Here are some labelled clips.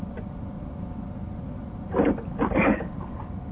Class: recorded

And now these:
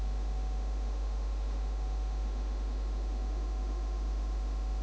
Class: remade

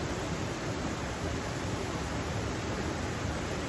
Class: recorded